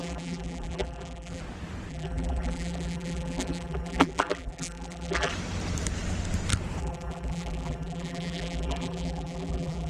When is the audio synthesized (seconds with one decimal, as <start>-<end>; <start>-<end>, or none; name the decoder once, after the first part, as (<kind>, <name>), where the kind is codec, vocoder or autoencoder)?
0.0-1.4 (vocoder, BigVGAN v2); 1.9-5.3; 6.8-9.9